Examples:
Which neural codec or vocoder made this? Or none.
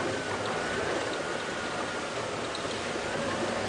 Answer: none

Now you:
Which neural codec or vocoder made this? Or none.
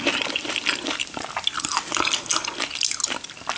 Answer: none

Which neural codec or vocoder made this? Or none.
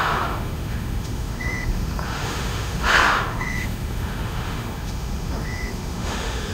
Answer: autoencoder, DAC-VAE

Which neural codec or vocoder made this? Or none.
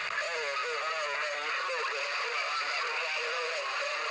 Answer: none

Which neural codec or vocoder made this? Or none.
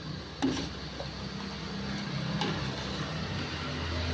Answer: none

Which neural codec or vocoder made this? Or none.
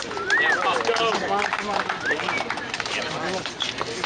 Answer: none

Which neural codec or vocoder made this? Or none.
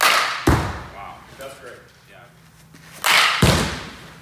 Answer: none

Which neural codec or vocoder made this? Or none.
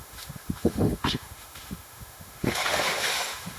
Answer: autoencoder, DAC-VAE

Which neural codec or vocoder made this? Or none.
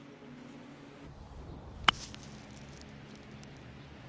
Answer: none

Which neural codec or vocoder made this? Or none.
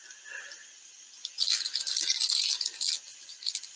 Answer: none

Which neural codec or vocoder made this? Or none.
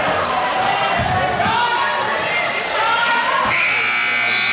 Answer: none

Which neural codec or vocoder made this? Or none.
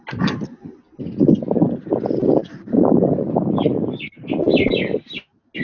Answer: none